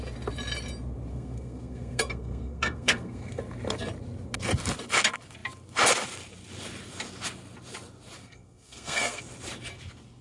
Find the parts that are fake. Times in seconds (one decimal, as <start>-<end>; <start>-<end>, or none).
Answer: 1.1-3.4; 8.2-9.2